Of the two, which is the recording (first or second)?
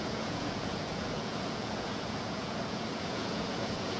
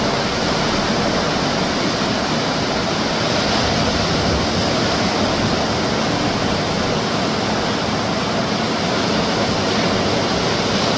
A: second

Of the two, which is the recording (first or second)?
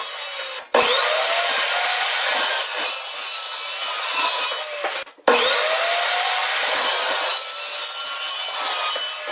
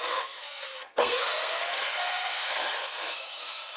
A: first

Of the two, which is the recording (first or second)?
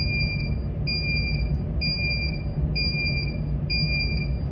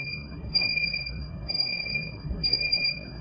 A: first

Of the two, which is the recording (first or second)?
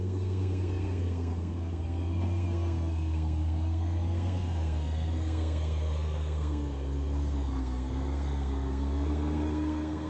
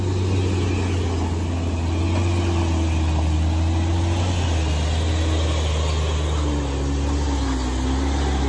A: second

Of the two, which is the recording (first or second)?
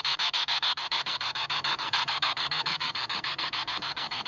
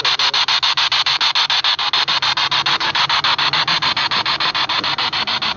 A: second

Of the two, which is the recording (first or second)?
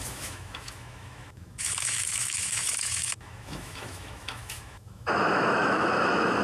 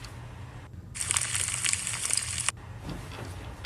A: second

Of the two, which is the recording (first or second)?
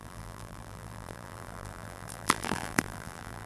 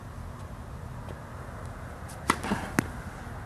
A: second